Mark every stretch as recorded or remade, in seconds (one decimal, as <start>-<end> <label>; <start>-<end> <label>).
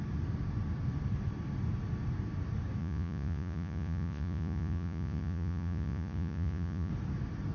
0.0-2.8 recorded; 2.8-6.9 remade; 6.9-7.5 recorded